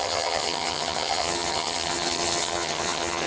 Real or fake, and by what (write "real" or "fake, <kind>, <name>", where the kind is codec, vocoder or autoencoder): fake, vocoder, HiFi-GAN